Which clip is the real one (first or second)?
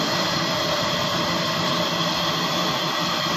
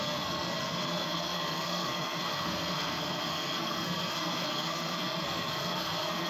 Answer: first